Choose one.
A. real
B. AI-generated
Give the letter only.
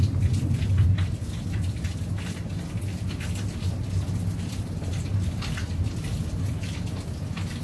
A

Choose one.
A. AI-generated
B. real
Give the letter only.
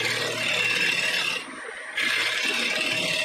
A